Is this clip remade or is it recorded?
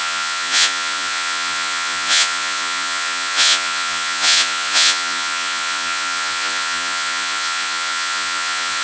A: remade